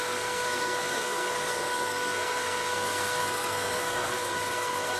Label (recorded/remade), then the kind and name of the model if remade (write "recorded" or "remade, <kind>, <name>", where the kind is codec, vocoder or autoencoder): remade, codec, SNAC